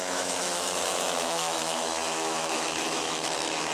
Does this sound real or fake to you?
fake